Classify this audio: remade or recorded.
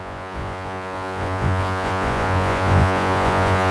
remade